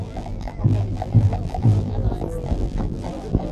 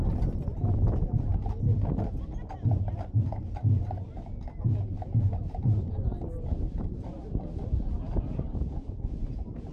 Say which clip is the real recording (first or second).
second